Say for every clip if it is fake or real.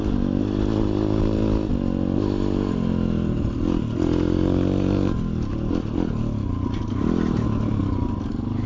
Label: real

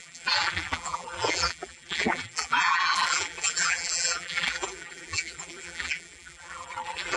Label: fake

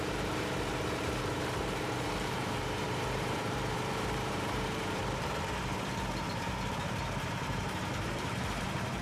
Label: fake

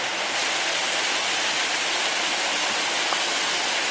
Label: real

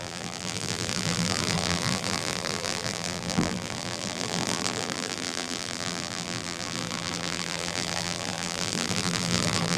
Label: fake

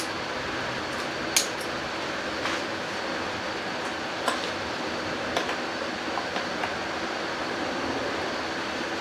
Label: real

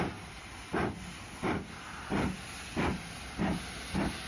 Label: real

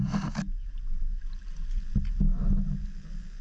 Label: real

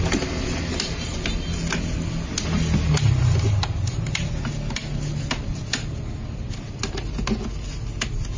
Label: real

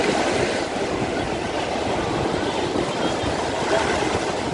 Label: real